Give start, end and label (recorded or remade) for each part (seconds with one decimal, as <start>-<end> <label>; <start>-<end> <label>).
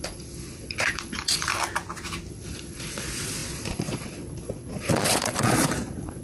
0.0-1.5 remade; 1.5-2.3 recorded; 2.3-6.2 remade